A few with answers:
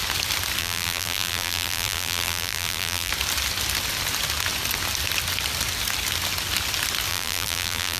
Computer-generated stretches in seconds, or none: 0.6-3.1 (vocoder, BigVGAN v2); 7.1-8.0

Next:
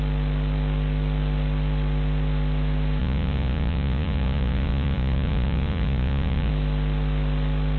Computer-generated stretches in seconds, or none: 3.0-6.5 (vocoder, Vocos)

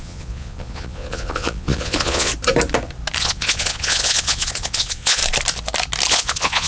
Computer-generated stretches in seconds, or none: 0.0-2.3 (vocoder, Vocos); 3.2-5.2; 6.1-6.7

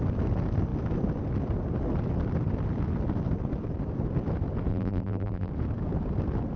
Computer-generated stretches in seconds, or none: 4.7-5.5 (vocoder, BigVGAN v2)